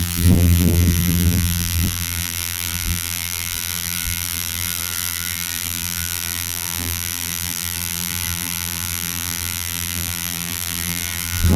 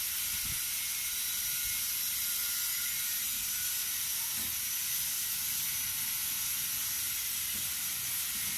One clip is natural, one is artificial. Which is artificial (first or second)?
first